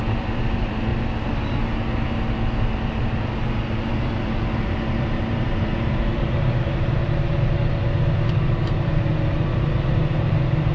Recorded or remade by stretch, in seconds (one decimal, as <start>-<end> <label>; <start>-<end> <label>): 0.0-0.9 remade; 0.9-3.9 recorded; 3.9-7.0 remade; 7.0-8.3 recorded; 8.3-10.7 remade